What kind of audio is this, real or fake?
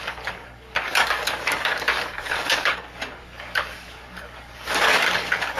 fake